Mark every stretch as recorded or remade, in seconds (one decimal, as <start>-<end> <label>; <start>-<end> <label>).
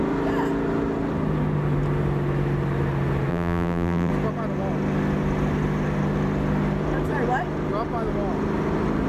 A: 0.0-3.3 recorded; 3.3-4.1 remade; 4.1-9.1 recorded